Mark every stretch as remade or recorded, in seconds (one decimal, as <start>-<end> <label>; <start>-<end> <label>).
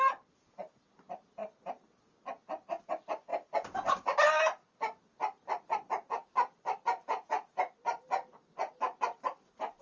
0.0-7.0 recorded; 7.0-7.6 remade; 7.6-9.8 recorded